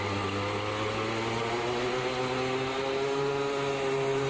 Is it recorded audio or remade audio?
recorded